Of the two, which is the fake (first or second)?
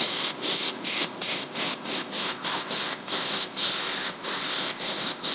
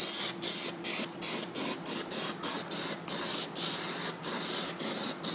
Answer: first